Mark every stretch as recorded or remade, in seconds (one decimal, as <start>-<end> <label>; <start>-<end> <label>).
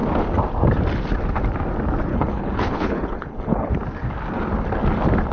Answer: 0.0-2.1 recorded; 2.1-3.7 remade; 3.7-5.3 recorded